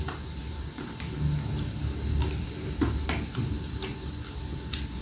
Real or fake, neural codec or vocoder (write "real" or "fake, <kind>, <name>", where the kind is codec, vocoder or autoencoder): real